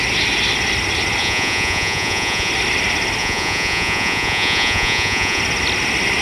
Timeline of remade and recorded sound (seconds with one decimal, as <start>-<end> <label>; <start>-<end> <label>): 0.0-1.2 recorded; 1.2-2.5 remade; 2.5-3.2 recorded; 3.2-5.4 remade; 5.4-6.2 recorded